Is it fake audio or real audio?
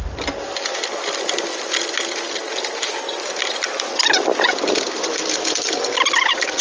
real